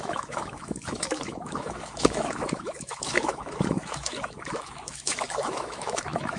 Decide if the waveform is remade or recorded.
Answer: remade